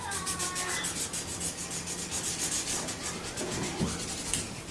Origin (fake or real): real